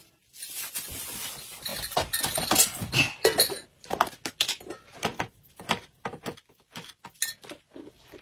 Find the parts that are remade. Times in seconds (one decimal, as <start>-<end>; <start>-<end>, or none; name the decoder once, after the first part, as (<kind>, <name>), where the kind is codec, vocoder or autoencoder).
none